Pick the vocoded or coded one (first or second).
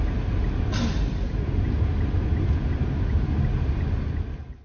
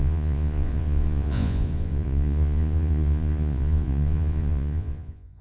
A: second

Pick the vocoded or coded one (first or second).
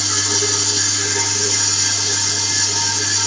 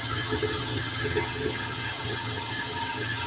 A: second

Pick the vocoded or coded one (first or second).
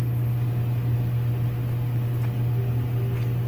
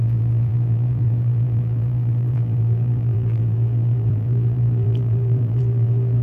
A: second